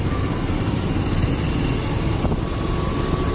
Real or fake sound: real